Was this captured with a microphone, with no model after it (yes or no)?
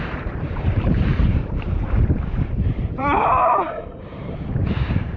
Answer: no